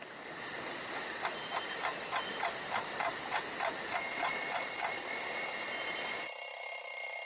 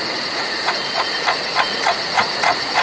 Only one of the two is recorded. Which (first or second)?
first